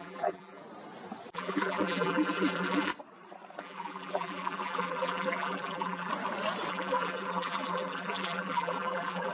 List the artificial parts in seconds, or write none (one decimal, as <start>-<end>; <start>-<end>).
0.0-0.6; 1.3-2.9; 3.6-6.1; 6.7-9.3